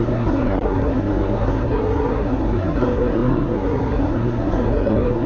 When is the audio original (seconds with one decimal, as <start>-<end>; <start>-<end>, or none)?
none